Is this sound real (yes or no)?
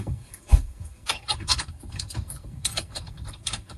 no